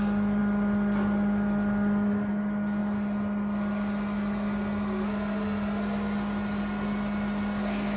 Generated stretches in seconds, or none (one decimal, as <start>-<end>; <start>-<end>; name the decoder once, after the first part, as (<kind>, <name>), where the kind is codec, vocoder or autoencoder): none